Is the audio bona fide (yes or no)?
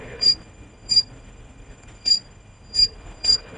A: no